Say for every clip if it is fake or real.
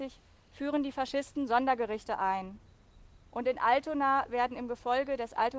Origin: real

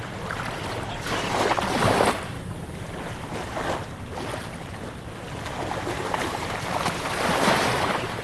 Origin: real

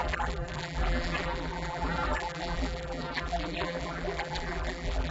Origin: fake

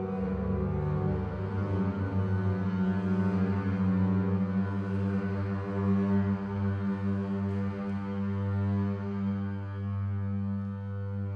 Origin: real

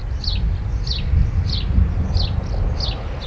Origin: real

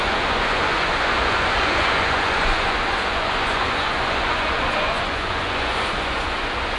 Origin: fake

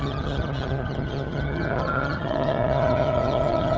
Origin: fake